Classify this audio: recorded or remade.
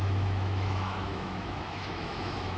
remade